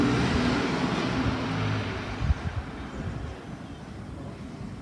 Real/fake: real